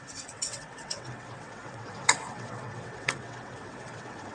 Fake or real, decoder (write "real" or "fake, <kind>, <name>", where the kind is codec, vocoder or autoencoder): fake, vocoder, WaveNeXt